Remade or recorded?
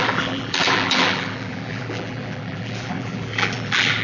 remade